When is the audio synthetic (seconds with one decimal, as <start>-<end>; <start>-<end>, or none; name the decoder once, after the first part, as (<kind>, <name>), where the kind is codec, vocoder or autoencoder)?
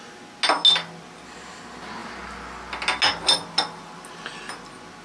none